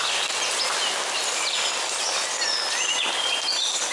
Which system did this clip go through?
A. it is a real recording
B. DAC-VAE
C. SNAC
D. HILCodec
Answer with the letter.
A